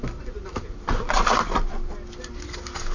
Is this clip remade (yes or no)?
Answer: no